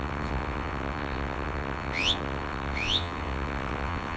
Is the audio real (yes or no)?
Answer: no